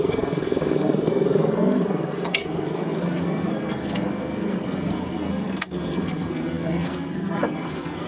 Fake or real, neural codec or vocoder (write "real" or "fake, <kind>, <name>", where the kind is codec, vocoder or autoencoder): fake, codec, SNAC